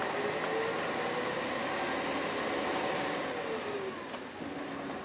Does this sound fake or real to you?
real